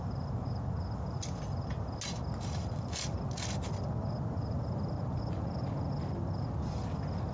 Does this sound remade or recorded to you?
recorded